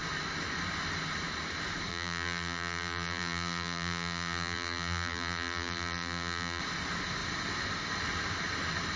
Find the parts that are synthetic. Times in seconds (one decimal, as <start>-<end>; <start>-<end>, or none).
1.9-6.6